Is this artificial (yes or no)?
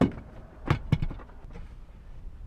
no